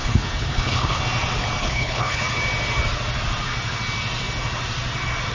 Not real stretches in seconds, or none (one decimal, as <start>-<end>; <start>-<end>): 0.0-1.0; 1.6-2.2